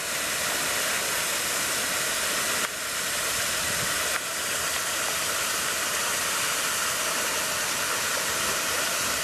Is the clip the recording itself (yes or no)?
yes